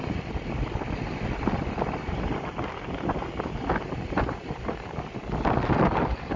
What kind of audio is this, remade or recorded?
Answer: recorded